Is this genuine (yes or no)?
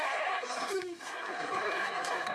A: no